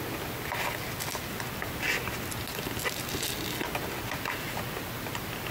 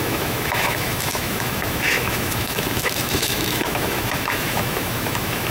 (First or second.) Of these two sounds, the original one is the first